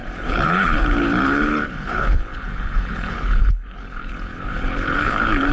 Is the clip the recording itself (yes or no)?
no